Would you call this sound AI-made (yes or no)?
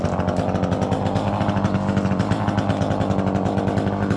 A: no